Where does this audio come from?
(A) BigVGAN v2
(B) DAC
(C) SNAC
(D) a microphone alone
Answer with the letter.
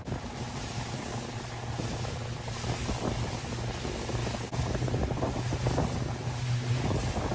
D